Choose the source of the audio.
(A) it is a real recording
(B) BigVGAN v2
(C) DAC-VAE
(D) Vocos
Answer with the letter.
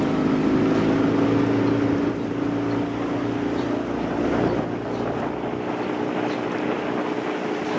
A